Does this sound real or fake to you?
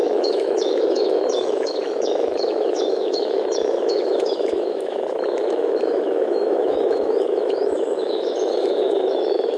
fake